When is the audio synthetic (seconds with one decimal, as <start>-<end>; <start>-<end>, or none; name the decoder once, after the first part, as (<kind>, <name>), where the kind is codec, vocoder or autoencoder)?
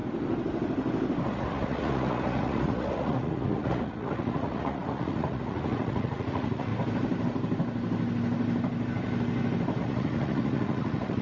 1.3-6.7 (vocoder, Vocos); 9.8-11.2